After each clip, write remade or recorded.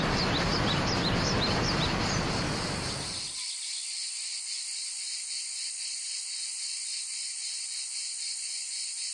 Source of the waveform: recorded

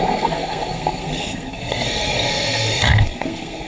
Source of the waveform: remade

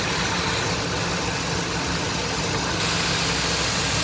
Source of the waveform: recorded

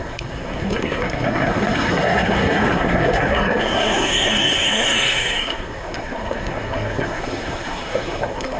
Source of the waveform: remade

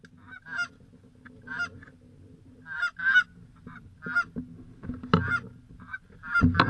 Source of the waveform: recorded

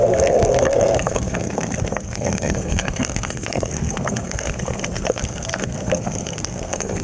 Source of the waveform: remade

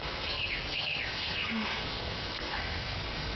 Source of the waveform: remade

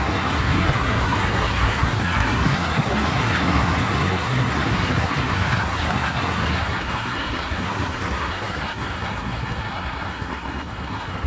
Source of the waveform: remade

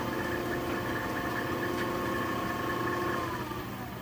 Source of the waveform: recorded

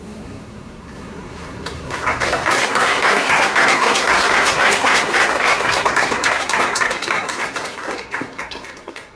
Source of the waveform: remade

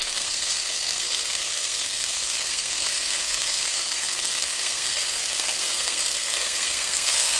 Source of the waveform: remade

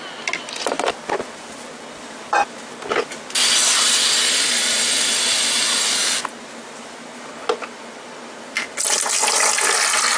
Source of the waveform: recorded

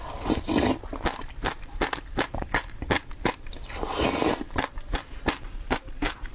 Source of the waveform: recorded